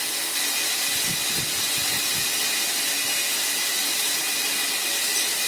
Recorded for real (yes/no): yes